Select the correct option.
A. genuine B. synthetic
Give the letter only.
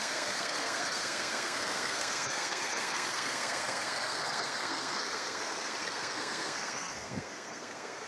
B